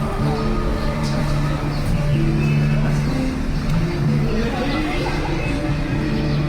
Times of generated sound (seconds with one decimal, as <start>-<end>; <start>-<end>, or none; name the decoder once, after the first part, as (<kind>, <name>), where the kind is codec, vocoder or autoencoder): 0.7-1.2 (vocoder, BigVGAN v2)